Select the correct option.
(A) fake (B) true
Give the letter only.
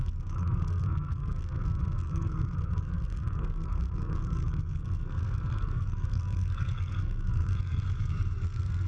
A